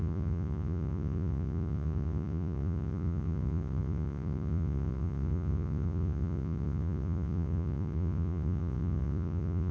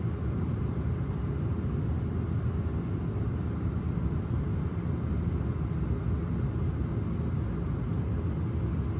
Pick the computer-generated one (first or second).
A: first